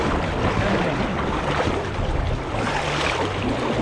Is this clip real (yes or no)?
yes